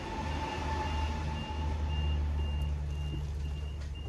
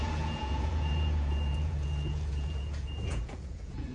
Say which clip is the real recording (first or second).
first